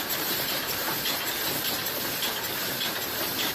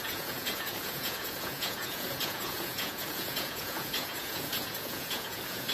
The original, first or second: first